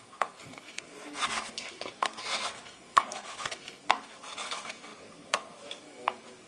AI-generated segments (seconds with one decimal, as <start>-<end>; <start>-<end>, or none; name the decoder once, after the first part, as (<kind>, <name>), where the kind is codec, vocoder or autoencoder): 0.0-6.5 (codec, SNAC)